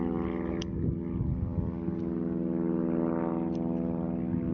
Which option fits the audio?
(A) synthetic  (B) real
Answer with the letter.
B